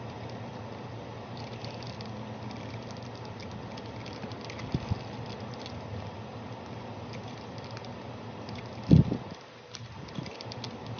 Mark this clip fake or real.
real